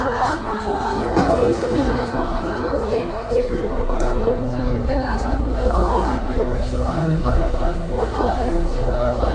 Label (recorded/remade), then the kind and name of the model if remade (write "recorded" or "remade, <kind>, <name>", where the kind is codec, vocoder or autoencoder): remade, codec, SNAC